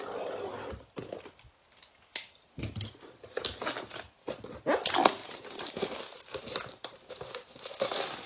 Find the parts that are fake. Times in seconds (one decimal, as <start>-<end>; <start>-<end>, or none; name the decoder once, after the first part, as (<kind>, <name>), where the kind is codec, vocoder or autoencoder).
5.2-7.7 (vocoder, BigVGAN v2)